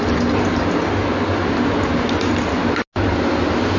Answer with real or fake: real